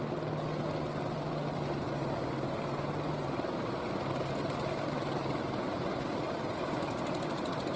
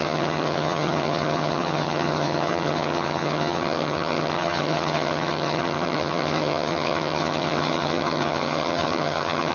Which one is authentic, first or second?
first